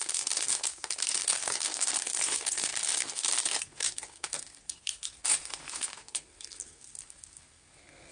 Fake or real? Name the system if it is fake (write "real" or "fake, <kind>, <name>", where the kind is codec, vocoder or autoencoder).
fake, codec, SNAC